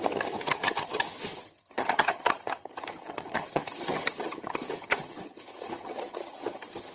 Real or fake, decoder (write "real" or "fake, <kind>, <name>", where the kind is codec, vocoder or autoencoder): fake, vocoder, HiFi-GAN